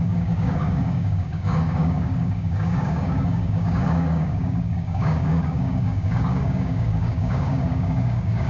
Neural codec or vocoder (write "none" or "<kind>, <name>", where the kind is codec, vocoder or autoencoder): codec, DAC